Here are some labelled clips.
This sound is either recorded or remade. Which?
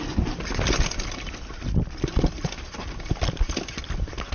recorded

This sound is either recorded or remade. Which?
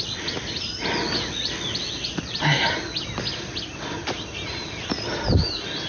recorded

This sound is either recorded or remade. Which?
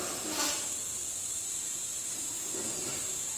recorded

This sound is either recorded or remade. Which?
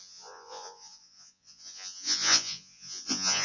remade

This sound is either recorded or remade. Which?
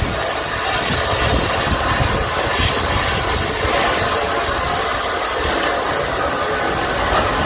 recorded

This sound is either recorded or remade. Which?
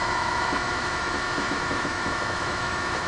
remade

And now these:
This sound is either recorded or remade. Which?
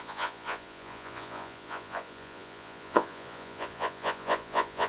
remade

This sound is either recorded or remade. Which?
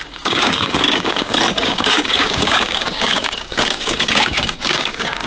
remade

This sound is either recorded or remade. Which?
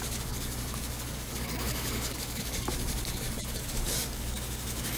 remade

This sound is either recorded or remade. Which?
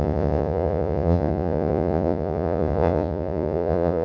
remade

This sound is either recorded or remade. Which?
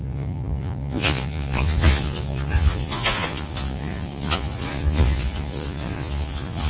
remade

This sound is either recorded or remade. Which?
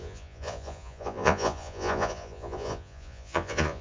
remade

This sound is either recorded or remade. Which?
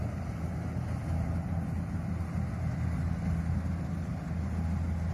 recorded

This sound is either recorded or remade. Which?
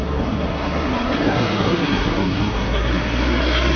remade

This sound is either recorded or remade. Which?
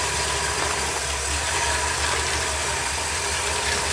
recorded